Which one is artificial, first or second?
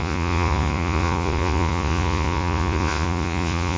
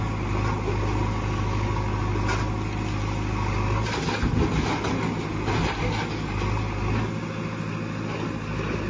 first